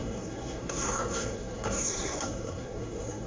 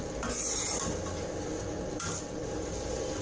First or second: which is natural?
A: second